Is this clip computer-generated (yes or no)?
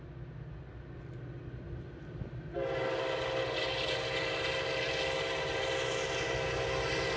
no